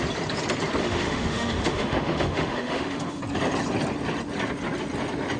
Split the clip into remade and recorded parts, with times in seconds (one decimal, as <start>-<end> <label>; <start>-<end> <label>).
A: 0.0-0.8 recorded; 0.8-3.2 remade; 3.2-5.4 recorded